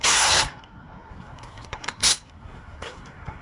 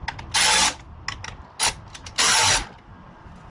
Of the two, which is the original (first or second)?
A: second